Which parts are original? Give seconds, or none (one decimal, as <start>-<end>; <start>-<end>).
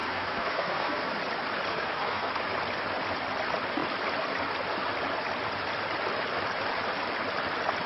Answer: 1.2-1.7; 2.3-7.9